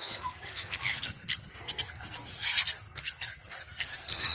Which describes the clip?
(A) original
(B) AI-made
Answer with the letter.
B